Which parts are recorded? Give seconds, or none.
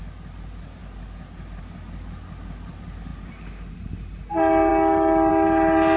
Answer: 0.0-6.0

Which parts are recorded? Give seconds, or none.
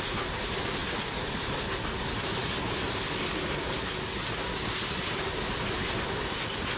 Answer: 0.0-6.8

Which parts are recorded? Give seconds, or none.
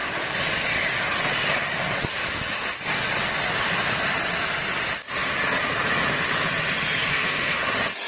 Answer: 0.0-7.1; 7.6-8.1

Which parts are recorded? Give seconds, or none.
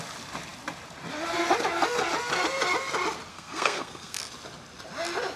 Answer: 0.0-3.3; 4.2-5.4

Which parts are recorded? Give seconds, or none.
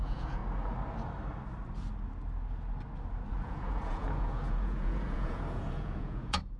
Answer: 0.4-3.3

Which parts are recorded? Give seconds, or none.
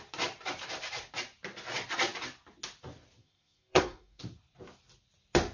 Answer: 0.0-3.2; 4.2-5.5